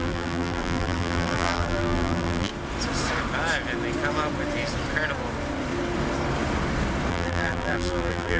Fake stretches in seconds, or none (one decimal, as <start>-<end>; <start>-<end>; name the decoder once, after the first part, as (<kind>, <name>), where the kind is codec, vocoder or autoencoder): 0.0-2.5 (vocoder, BigVGAN v2); 7.1-8.4